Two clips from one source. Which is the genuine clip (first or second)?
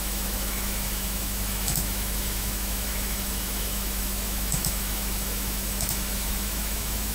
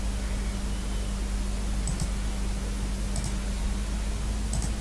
second